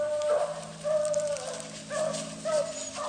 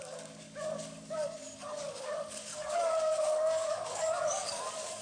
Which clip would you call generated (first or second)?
second